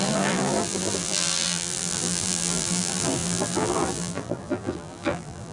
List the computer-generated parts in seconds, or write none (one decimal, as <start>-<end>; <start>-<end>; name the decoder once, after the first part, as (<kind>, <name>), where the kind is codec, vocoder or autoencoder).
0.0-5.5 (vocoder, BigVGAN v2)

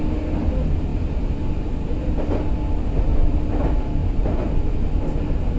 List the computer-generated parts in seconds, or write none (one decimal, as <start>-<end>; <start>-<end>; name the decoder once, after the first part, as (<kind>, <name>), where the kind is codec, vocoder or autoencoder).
3.1-3.6 (vocoder, BigVGAN v2)

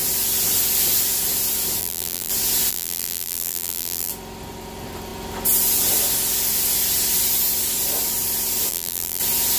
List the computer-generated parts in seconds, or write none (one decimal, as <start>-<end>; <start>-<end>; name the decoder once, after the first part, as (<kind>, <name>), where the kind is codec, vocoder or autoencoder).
1.8-2.3 (vocoder, BigVGAN v2); 2.7-4.1; 8.7-9.2

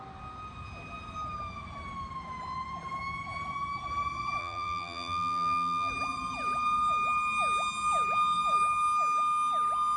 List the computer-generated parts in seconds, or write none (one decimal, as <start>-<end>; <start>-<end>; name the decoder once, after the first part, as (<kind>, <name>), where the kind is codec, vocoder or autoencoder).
4.4-5.9 (vocoder, BigVGAN v2)